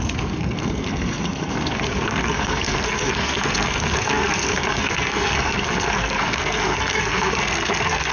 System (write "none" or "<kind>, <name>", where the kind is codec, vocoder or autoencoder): codec, SNAC